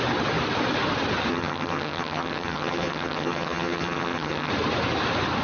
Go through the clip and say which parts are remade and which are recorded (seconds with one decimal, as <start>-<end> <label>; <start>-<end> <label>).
0.0-1.3 recorded; 1.3-4.5 remade; 4.5-5.4 recorded